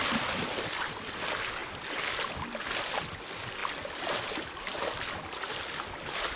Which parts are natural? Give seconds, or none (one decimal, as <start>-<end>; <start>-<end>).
0.0-6.4